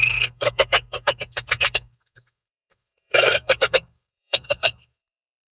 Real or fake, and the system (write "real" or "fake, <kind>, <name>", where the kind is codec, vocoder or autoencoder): fake, codec, SNAC